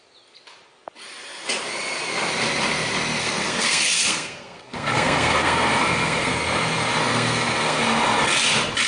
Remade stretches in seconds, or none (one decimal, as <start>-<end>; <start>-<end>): 3.2-6.3; 7.0-7.8